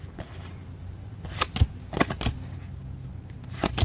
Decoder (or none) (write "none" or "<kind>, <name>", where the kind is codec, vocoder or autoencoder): none